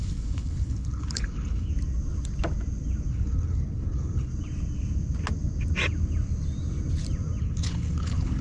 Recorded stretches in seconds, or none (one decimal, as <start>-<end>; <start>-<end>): 1.7-3.1; 4.3-7.4